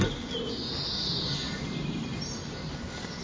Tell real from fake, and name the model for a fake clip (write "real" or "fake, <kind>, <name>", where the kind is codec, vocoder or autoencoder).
real